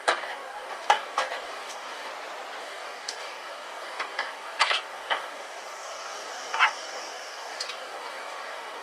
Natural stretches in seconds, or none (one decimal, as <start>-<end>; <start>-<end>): 2.1-2.6